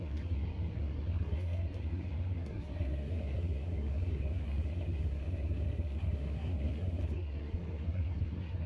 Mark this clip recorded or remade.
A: remade